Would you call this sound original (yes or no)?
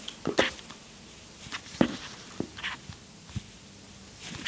yes